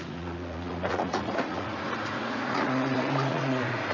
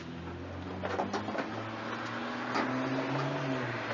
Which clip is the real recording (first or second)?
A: second